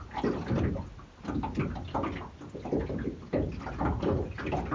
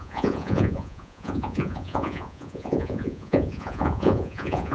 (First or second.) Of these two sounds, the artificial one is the second